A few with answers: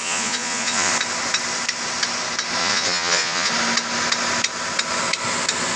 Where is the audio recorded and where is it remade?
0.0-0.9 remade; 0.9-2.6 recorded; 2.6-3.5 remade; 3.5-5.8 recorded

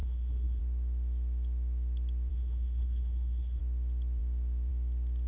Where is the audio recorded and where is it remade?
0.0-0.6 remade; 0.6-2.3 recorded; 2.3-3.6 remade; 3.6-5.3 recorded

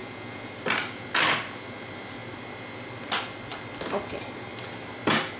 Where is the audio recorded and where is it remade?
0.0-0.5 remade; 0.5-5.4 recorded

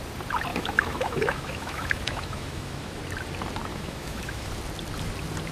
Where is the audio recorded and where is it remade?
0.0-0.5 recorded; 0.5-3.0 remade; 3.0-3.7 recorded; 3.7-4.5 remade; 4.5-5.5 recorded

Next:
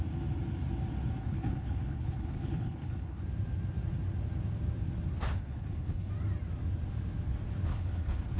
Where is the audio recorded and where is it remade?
0.0-1.2 recorded; 1.2-3.2 remade; 3.2-5.4 recorded; 5.4-6.1 remade; 6.1-7.7 recorded; 7.7-8.4 remade

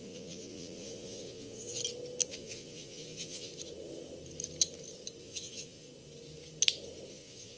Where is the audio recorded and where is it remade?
0.0-1.8 remade; 1.8-2.3 recorded; 2.3-3.5 remade; 3.5-5.2 recorded; 5.2-5.9 remade; 5.9-7.1 recorded; 7.1-7.6 remade

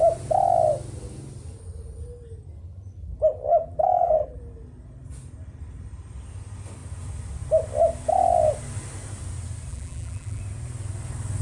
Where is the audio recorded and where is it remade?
0.0-3.5 recorded; 3.5-4.4 remade; 4.4-9.7 recorded; 9.7-10.4 remade; 10.4-11.4 recorded

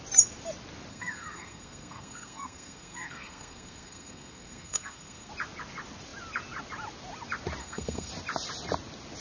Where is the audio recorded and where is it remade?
0.0-0.9 recorded; 0.9-5.3 remade; 5.3-7.6 recorded; 7.6-8.1 remade; 8.1-9.2 recorded